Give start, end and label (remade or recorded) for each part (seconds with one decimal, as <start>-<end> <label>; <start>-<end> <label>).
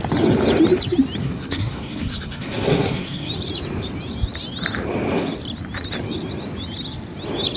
0.0-1.2 recorded; 1.2-3.3 remade; 3.3-7.6 recorded